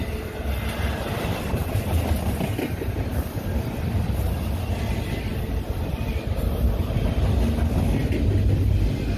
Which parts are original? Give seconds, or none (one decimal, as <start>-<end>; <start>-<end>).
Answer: 0.0-1.6; 2.1-5.3; 6.4-9.2